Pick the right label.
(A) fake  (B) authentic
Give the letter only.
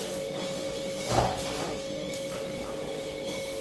A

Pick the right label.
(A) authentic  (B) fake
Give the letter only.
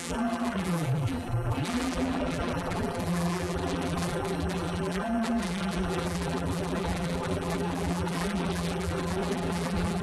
B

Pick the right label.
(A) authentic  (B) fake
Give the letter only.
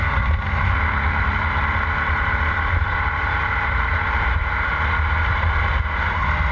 A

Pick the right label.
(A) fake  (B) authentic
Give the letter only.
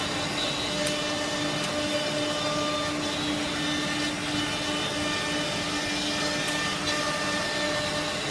B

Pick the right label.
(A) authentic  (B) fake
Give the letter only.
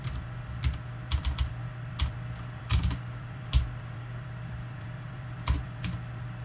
B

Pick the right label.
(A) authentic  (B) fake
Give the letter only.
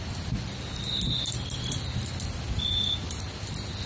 A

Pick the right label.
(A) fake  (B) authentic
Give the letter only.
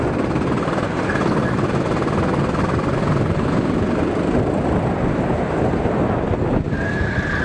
B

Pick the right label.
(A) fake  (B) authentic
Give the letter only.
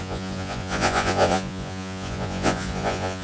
A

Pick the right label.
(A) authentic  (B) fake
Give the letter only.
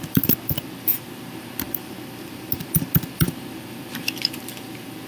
B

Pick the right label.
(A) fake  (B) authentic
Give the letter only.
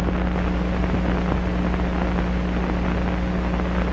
B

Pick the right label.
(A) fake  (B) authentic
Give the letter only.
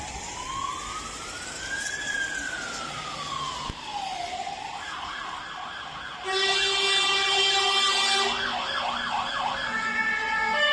B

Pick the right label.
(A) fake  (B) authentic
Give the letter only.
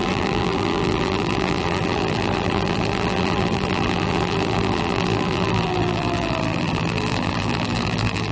A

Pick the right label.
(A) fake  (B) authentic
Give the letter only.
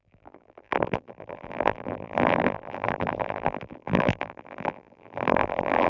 A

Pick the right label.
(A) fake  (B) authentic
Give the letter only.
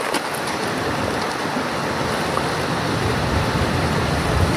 B